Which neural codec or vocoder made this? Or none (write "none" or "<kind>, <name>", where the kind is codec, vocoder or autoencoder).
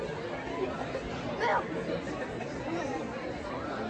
none